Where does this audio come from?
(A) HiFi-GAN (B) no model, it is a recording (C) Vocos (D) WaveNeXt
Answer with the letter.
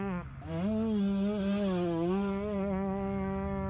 B